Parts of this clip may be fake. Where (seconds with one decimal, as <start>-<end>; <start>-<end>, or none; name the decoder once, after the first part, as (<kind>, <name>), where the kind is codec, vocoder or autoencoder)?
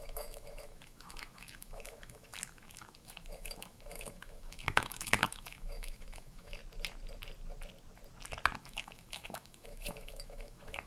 0.0-6.6 (autoencoder, DAC-VAE); 8.6-10.9